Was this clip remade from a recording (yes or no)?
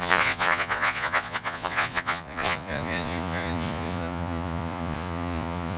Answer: yes